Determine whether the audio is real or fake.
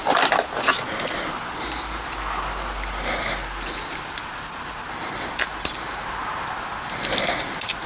real